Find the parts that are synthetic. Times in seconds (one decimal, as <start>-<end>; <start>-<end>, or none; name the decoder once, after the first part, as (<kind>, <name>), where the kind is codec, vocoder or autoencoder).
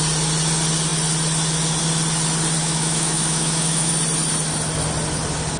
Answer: 2.6-3.9 (autoencoder, DAC-VAE)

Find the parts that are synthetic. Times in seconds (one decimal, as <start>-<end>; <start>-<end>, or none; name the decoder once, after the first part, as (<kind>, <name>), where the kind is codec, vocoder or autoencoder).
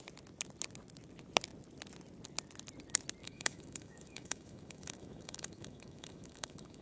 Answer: 3.2-6.8 (autoencoder, DAC-VAE)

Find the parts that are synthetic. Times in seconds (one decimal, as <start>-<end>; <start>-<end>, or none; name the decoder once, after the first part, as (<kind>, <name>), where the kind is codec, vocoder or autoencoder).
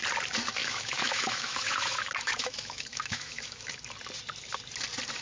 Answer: 0.6-3.7 (autoencoder, DAC-VAE)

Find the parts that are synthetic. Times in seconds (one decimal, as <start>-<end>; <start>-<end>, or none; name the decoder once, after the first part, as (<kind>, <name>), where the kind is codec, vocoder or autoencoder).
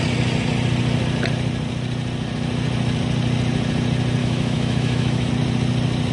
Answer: 4.2-5.3 (autoencoder, DAC-VAE)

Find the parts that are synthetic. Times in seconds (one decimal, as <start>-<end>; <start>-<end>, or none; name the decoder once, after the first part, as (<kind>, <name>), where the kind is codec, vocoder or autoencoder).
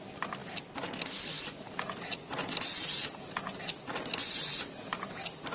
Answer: none